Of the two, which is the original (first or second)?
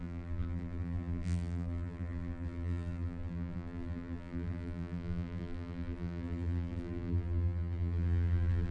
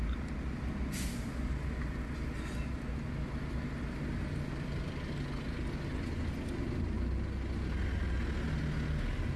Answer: second